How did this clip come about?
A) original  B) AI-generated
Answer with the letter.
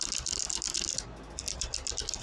A